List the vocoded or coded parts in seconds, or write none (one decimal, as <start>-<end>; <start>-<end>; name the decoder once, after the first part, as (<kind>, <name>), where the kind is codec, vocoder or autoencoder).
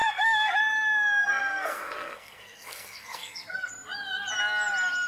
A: 0.0-0.6 (codec, SNAC); 1.2-3.7